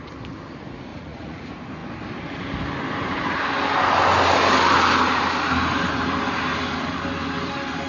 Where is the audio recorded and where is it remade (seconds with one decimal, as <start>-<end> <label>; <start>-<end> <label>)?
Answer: 0.0-0.9 recorded; 0.9-1.4 remade; 1.4-7.9 recorded